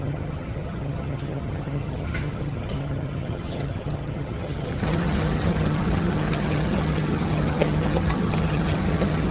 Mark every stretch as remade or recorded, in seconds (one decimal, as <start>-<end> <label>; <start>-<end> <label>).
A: 0.0-9.3 remade